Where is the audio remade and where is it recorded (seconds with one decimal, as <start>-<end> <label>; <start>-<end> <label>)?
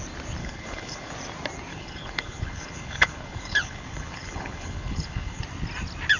0.0-0.4 recorded; 0.4-1.1 remade; 1.1-1.7 recorded; 1.7-5.4 remade; 5.4-6.2 recorded